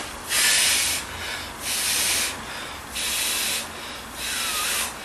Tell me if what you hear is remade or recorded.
recorded